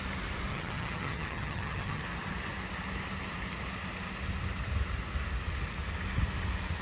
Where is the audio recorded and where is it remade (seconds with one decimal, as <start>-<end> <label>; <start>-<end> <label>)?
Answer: 0.0-0.5 recorded; 0.5-2.0 remade; 2.0-6.8 recorded